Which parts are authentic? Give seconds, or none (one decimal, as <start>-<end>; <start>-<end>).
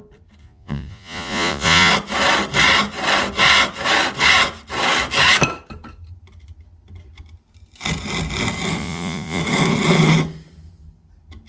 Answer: 0.0-0.4; 1.9-8.8; 9.4-11.5